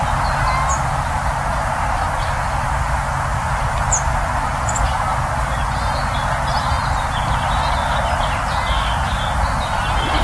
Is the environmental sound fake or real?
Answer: real